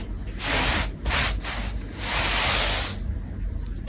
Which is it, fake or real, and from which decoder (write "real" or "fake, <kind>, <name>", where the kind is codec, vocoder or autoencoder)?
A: real